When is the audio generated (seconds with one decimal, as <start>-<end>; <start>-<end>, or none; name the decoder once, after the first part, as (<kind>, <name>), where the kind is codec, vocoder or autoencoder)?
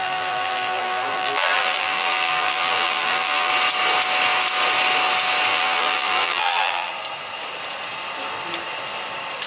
0.0-3.5 (vocoder, BigVGAN v2); 5.5-6.9